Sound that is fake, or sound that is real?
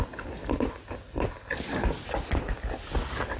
real